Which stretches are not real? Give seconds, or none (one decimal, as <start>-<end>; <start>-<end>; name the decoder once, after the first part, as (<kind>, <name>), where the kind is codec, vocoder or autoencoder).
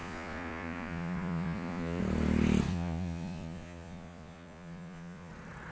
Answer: 0.0-2.0 (vocoder, Vocos); 2.7-5.3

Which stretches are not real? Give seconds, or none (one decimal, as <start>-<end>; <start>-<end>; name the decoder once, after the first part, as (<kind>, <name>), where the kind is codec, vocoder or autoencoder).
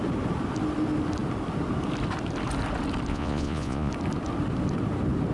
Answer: 3.1-3.9 (vocoder, Vocos)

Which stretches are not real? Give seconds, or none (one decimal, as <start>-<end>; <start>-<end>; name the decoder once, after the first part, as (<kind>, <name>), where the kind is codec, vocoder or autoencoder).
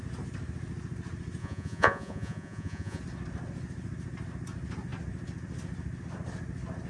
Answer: 1.4-3.0 (vocoder, Vocos)